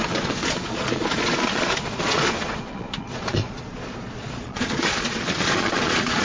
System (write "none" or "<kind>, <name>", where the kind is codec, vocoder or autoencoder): vocoder, Vocos